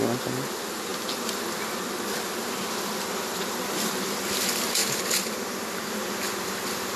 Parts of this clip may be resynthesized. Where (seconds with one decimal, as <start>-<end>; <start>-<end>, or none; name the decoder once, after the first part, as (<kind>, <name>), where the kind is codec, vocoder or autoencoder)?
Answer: 4.8-5.7 (vocoder, BigVGAN v2)